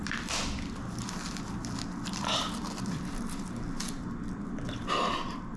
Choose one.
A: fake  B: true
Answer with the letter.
B